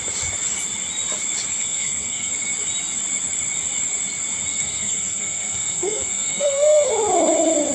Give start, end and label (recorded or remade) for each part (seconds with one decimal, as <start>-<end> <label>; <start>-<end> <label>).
0.0-1.5 recorded; 1.5-2.3 remade; 2.3-4.5 recorded; 4.5-6.9 remade; 6.9-7.7 recorded